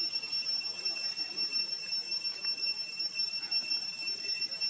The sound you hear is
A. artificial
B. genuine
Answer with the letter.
B